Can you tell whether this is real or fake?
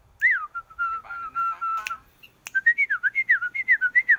real